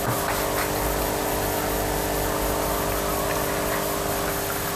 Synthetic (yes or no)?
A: no